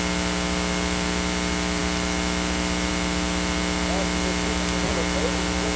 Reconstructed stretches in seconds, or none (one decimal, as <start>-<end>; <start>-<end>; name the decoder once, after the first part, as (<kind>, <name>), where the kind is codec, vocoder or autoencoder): none